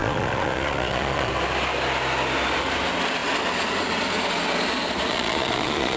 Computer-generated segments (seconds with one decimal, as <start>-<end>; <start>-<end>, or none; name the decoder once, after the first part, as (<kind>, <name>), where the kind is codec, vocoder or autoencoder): 0.0-1.3 (vocoder, Vocos); 5.1-6.0